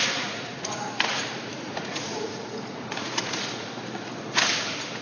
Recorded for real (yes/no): no